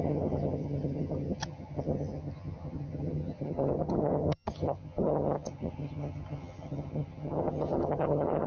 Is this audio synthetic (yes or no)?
yes